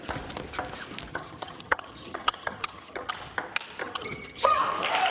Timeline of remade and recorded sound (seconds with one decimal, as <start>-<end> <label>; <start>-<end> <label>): 0.0-1.1 recorded; 1.1-3.1 remade; 3.1-3.8 recorded; 3.8-4.6 remade; 4.6-5.1 recorded